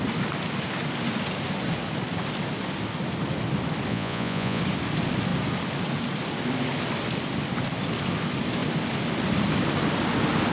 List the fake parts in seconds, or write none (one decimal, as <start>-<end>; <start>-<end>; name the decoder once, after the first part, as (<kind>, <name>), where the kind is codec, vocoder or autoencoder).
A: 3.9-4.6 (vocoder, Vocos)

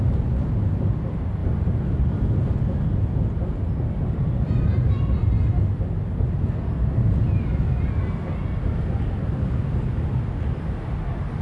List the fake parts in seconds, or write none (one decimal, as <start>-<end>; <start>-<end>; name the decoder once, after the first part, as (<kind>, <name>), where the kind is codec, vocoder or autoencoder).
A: none

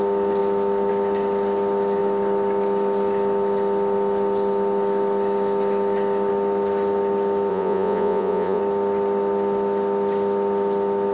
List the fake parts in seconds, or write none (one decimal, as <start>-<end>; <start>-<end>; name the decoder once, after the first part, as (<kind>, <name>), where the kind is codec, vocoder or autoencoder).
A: 7.5-8.6 (vocoder, Vocos)